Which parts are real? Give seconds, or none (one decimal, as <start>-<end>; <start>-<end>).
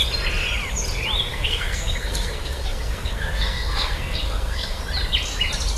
0.0-1.3; 4.8-5.8